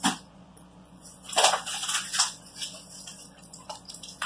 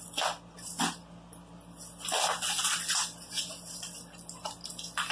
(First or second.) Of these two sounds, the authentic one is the second